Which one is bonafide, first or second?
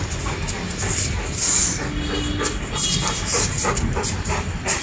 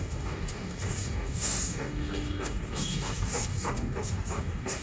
first